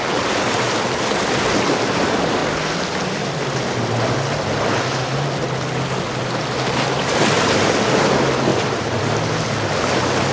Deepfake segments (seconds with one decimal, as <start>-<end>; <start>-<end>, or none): 8.5-9.0